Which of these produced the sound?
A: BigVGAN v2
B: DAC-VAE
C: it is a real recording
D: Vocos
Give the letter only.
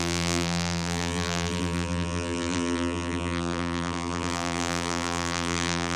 A